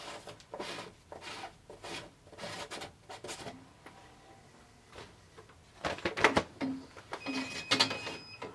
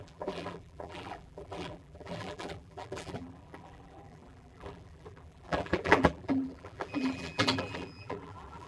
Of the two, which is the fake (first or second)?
second